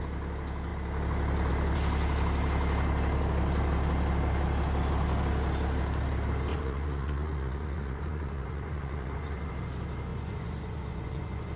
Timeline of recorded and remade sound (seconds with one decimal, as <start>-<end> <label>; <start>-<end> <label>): 0.0-6.5 recorded; 6.5-9.5 remade; 9.5-10.1 recorded; 10.1-11.6 remade